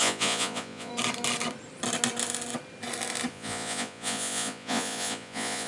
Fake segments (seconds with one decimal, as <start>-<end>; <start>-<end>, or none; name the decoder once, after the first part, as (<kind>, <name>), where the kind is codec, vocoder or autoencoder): 0.0-0.9 (vocoder, Vocos); 3.3-5.7